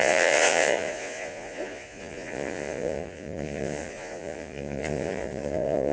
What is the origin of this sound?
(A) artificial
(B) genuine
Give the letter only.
A